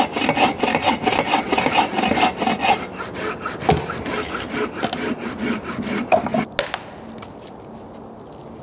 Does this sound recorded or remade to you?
recorded